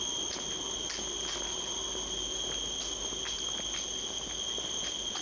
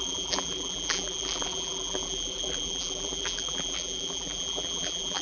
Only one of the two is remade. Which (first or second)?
second